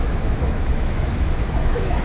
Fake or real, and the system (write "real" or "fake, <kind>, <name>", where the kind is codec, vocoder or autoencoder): fake, autoencoder, DAC-VAE